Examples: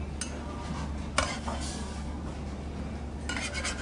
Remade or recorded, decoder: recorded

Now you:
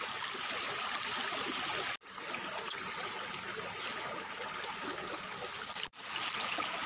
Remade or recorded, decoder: recorded